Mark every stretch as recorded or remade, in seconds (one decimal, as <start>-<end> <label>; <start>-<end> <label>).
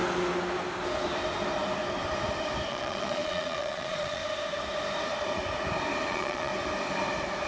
0.0-2.7 recorded; 2.7-4.2 remade; 4.2-6.1 recorded; 6.1-6.5 remade; 6.5-7.5 recorded